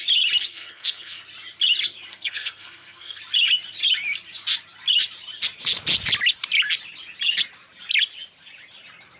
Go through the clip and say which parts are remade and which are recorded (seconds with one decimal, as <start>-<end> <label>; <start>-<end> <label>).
0.0-0.5 recorded; 0.5-1.2 remade; 1.2-2.1 recorded; 2.1-3.2 remade; 3.2-9.2 recorded